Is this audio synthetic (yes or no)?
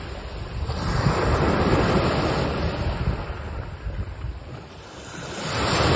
yes